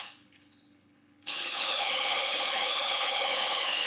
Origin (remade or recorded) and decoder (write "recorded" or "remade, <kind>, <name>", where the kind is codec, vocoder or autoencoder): remade, codec, HILCodec